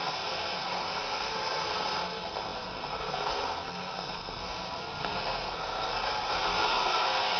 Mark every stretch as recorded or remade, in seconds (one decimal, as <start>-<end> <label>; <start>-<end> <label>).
0.0-7.4 remade